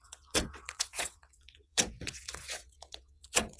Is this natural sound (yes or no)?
no